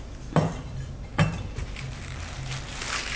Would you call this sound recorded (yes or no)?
yes